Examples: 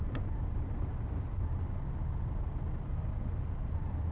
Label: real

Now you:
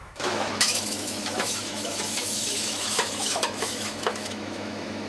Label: fake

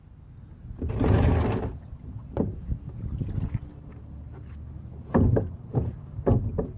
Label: real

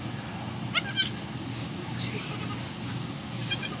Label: real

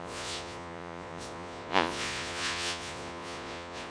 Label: fake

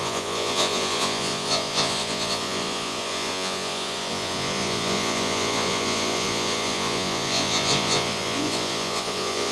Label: fake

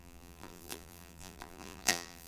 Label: fake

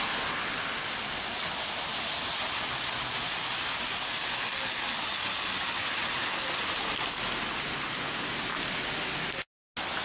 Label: real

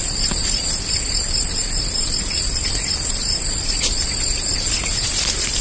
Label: real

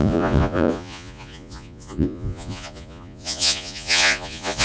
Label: fake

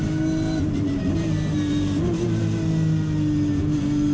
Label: real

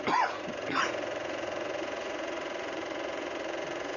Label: fake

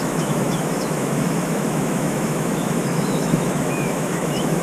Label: fake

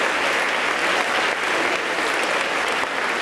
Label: real